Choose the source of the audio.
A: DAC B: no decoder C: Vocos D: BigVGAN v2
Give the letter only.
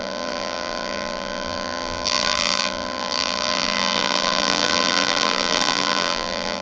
D